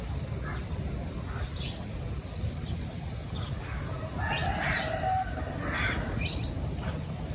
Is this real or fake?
real